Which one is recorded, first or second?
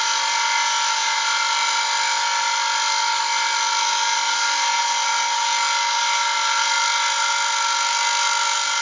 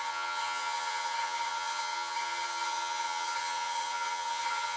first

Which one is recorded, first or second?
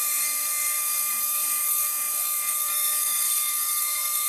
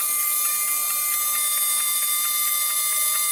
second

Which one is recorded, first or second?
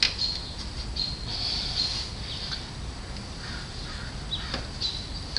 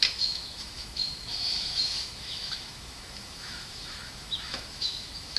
first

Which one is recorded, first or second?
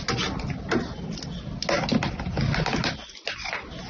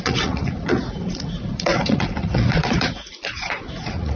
first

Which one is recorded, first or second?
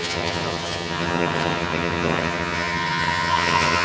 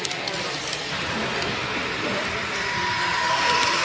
second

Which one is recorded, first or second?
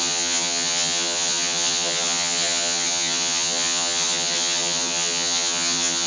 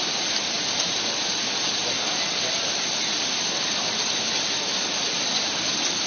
second